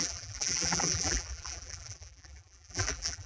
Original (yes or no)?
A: no